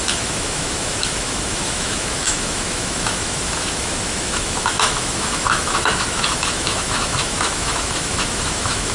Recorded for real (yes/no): no